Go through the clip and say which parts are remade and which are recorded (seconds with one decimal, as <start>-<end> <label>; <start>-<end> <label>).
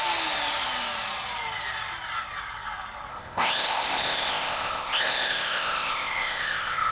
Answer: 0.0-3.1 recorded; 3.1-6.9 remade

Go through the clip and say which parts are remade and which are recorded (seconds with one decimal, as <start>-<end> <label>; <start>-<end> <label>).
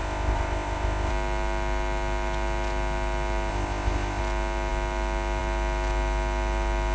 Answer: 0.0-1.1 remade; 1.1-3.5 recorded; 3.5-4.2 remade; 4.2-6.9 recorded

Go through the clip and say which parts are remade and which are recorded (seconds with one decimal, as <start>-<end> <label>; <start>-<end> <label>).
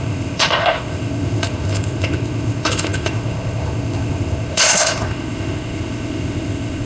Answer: 0.0-6.9 remade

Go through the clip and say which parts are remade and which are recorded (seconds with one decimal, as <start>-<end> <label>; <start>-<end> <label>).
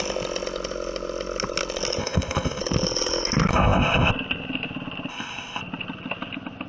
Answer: 0.0-2.0 recorded; 2.0-2.6 remade; 2.6-3.5 recorded; 3.5-4.1 remade; 4.1-5.1 recorded; 5.1-5.6 remade; 5.6-6.7 recorded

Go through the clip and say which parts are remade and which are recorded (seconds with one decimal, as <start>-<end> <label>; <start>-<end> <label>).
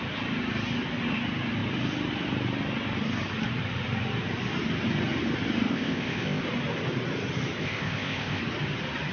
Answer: 0.0-5.7 recorded; 5.7-6.4 remade; 6.4-7.6 recorded; 7.6-8.4 remade; 8.4-9.1 recorded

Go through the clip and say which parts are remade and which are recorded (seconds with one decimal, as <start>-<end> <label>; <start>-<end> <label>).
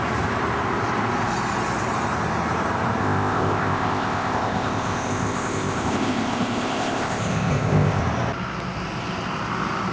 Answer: 0.0-3.0 recorded; 3.0-8.0 remade; 8.0-9.9 recorded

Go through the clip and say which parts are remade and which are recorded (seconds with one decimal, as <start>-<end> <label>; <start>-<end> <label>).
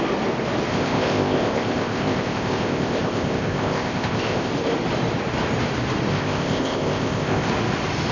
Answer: 0.0-0.7 recorded; 0.7-4.5 remade; 4.5-6.1 recorded; 6.1-7.5 remade; 7.5-8.1 recorded